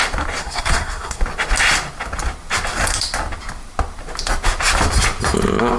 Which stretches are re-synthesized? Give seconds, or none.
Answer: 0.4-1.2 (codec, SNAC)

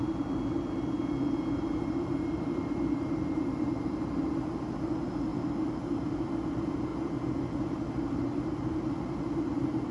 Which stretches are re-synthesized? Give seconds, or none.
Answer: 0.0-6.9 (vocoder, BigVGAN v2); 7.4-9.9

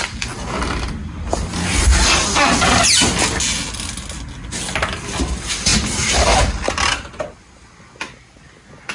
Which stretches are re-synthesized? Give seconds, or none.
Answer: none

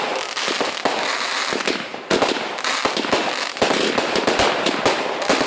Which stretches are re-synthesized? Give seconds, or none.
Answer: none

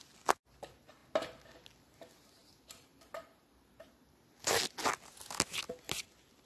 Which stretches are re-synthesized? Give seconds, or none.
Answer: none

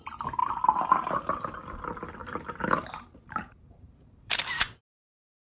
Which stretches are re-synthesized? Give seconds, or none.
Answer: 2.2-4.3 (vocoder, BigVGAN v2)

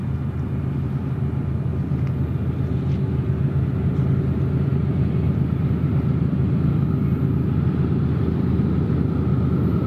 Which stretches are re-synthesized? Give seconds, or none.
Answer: none